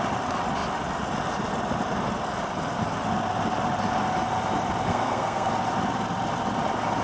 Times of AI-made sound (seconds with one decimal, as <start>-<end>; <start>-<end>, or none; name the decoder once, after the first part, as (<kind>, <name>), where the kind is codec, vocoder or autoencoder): 4.9-5.5 (codec, SNAC)